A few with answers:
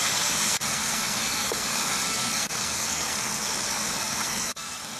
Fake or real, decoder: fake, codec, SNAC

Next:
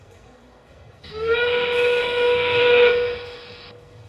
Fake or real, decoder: fake, codec, SNAC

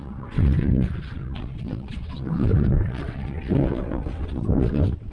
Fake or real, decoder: fake, vocoder, WaveNeXt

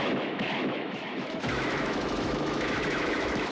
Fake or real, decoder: fake, autoencoder, DAC-VAE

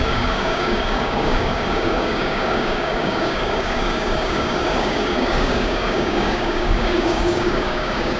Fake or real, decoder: fake, codec, DAC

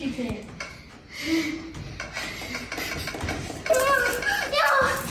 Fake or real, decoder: real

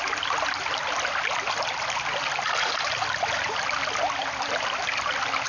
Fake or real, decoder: real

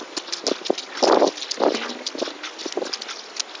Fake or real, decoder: real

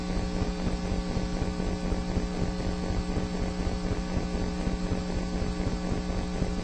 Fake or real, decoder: real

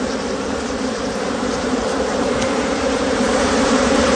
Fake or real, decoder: fake, vocoder, BigVGAN v2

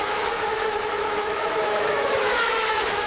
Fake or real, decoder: fake, autoencoder, DAC-VAE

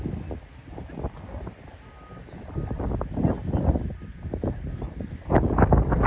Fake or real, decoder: real